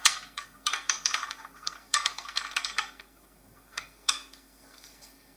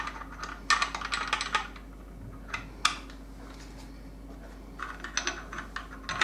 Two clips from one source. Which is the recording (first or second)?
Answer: second